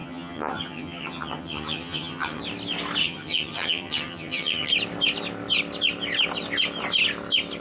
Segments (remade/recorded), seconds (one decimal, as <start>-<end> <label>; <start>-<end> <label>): 0.0-2.4 remade; 2.4-3.0 recorded; 3.0-4.7 remade; 4.7-7.6 recorded